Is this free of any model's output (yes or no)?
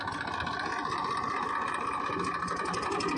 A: yes